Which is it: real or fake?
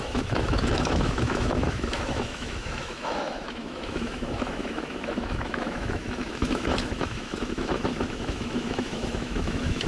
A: fake